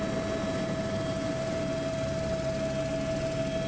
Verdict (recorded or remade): recorded